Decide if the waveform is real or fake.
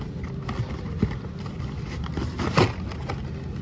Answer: real